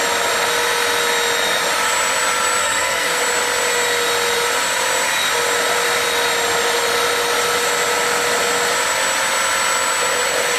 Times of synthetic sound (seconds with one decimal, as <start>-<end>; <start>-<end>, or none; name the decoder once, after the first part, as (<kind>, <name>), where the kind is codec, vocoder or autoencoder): 2.6-3.2 (codec, SNAC)

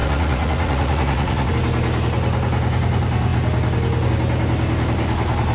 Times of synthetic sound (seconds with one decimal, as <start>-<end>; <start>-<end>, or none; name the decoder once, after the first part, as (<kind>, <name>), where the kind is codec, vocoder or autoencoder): 0.0-1.5 (vocoder, Vocos)

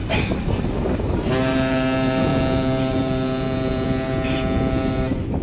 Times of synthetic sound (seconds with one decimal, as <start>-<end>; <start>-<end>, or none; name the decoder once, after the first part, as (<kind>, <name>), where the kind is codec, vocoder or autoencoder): 1.0-5.4 (vocoder, BigVGAN v2)

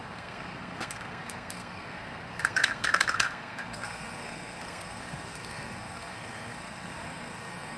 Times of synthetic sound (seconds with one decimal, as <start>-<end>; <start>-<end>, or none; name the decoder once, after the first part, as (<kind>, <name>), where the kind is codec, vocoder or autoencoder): 0.0-7.8 (codec, SNAC)